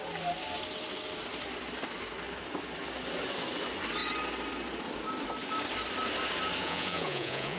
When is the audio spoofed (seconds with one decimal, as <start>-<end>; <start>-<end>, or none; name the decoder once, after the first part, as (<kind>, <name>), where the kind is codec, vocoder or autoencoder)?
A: 6.6-7.6 (vocoder, Vocos)